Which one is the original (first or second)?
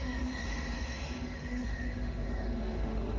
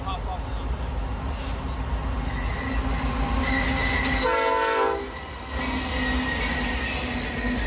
second